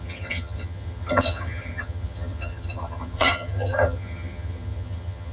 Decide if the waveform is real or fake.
fake